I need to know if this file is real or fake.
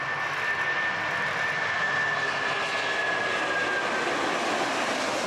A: real